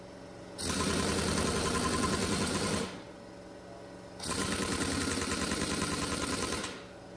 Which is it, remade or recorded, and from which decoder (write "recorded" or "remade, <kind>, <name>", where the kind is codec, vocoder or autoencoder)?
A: recorded